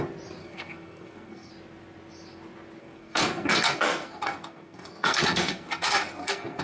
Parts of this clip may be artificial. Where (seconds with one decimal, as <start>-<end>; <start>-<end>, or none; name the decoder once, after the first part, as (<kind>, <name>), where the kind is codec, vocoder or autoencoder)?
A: 0.4-1.5 (codec, SNAC); 2.8-6.6